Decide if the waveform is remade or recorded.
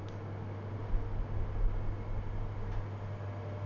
recorded